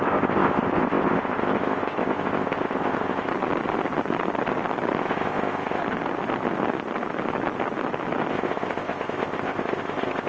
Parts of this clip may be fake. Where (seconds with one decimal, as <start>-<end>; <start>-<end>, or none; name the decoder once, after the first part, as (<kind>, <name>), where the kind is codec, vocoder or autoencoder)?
0.0-3.3 (codec, ZipCodec); 5.0-5.8; 8.3-10.3